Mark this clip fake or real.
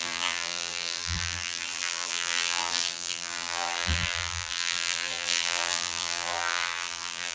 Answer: fake